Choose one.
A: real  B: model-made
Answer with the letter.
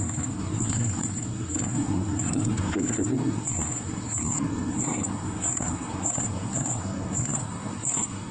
B